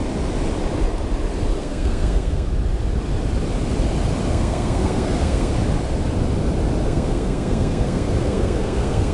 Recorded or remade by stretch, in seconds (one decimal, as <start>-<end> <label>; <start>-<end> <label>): 0.0-1.6 recorded; 1.6-2.5 remade; 2.5-4.3 recorded; 4.3-5.5 remade; 5.5-6.8 recorded; 6.8-9.1 remade